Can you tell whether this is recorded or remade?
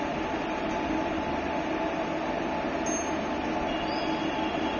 recorded